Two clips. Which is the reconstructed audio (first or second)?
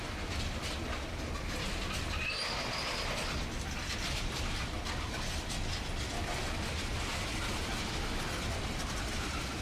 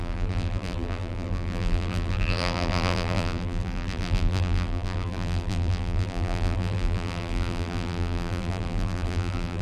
second